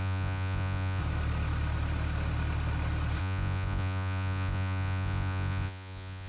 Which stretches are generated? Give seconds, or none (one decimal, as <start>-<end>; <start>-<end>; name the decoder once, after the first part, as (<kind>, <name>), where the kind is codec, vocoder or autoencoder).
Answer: 0.0-1.0 (vocoder, Vocos); 3.2-6.3